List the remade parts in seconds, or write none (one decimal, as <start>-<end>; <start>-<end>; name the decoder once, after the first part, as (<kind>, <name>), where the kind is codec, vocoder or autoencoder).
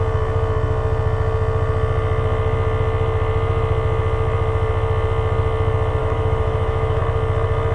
6.0-7.0 (autoencoder, DAC-VAE)